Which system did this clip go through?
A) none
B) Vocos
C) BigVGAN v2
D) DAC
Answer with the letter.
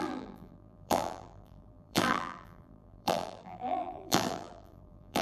C